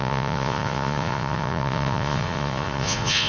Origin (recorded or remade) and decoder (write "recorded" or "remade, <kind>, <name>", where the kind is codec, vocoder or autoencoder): remade, vocoder, Vocos